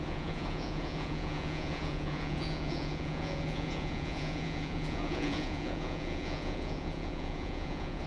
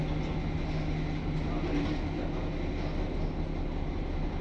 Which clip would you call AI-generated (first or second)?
first